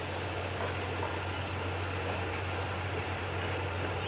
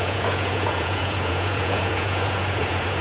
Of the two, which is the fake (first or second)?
second